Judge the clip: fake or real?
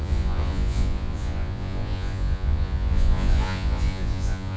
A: fake